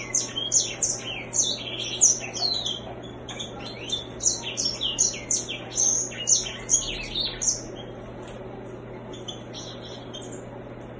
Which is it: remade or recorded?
recorded